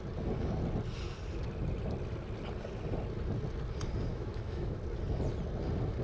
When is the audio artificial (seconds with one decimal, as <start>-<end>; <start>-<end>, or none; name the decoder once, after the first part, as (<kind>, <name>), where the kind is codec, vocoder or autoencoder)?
4.1-4.8 (autoencoder, DAC-VAE)

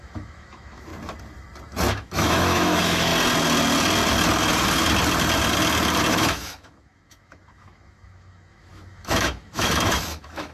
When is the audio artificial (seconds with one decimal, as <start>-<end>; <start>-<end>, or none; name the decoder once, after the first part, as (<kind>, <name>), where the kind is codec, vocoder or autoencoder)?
0.0-0.9 (autoencoder, DAC-VAE); 1.9-3.1; 6.1-10.5

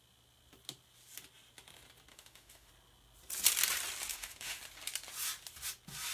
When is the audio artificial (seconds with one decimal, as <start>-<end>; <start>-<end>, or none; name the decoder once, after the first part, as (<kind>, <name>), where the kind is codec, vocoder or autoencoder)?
2.1-2.7 (autoencoder, DAC-VAE); 4.1-4.6

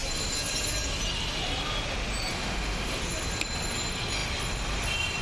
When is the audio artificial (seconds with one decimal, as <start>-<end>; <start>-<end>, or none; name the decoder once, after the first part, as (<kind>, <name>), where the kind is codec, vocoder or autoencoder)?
2.3-3.0 (autoencoder, DAC-VAE)

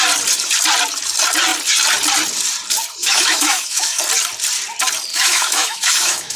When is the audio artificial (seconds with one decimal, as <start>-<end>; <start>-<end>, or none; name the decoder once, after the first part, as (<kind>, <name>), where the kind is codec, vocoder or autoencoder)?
3.0-4.0 (autoencoder, DAC-VAE); 5.1-6.4